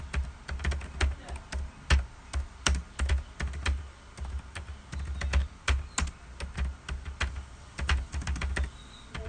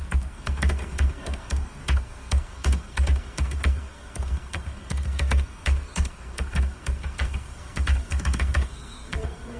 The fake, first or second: second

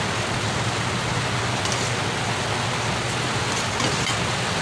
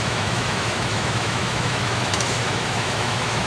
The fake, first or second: second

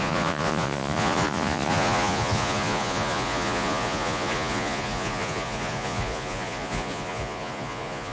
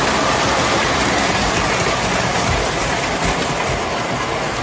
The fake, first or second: first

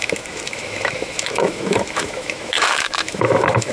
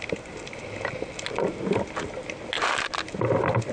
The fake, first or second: first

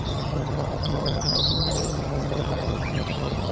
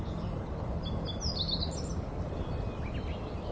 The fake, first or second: first